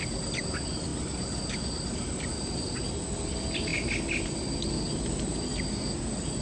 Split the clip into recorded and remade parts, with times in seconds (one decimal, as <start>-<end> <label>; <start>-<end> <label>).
0.0-6.4 recorded